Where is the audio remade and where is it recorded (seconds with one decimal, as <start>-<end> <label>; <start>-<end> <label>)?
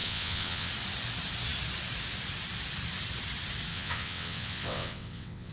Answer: 0.0-0.7 remade; 0.7-3.7 recorded; 3.7-5.5 remade